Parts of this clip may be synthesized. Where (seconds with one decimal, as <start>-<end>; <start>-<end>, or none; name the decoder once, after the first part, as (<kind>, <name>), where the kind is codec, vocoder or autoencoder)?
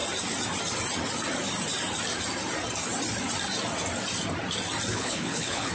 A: 4.9-5.7 (codec, HILCodec)